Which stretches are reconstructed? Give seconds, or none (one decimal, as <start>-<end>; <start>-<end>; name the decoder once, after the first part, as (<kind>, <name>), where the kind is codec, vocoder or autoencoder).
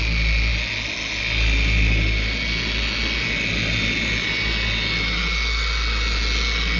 none